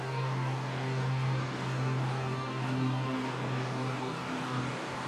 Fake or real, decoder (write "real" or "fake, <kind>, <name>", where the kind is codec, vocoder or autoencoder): fake, codec, DAC